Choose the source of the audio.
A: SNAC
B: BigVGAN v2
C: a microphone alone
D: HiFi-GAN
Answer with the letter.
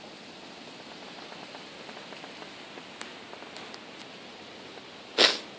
C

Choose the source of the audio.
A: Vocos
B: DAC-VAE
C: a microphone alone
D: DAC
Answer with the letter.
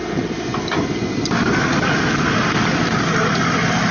C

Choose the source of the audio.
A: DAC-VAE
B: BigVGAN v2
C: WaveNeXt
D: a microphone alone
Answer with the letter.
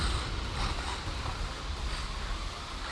D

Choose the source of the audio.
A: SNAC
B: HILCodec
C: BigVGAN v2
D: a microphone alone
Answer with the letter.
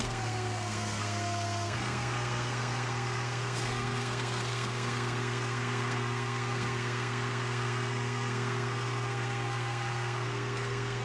A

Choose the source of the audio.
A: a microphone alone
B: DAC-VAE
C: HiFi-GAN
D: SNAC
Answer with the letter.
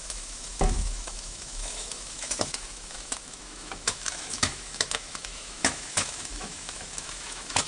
B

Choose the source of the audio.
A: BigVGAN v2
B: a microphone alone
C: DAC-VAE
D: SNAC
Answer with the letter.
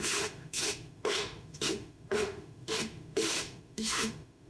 C